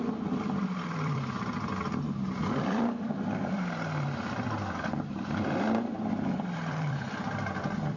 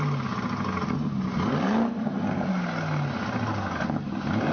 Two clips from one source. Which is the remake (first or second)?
first